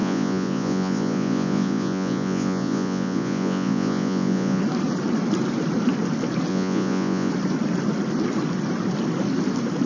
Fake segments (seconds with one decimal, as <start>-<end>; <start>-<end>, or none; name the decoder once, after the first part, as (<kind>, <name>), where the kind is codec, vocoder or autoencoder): 0.0-4.6 (vocoder, Vocos); 6.5-7.3